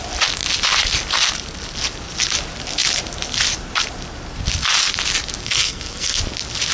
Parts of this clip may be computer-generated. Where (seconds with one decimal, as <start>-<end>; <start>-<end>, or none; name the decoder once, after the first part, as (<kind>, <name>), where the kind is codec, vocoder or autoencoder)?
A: 5.4-6.2 (codec, SNAC)